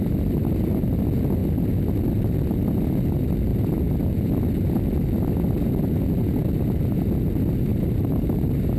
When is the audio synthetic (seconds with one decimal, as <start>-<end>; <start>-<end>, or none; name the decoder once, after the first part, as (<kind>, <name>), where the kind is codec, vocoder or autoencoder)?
7.7-8.8 (vocoder, BigVGAN v2)